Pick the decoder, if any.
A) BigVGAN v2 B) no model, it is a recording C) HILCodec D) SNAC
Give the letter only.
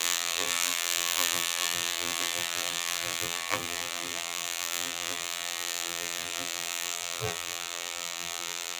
A